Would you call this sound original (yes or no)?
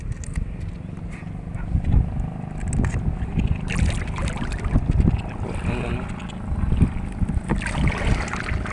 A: yes